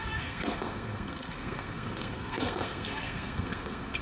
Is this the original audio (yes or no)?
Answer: no